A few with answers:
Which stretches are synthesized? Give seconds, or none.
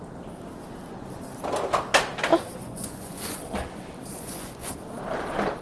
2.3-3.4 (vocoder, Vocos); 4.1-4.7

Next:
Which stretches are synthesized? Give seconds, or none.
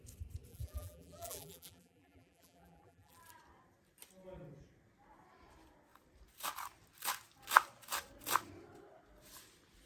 0.5-3.2 (vocoder, BigVGAN v2)